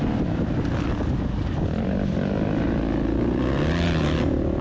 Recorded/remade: recorded